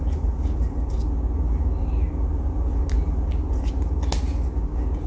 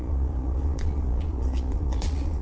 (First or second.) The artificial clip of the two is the second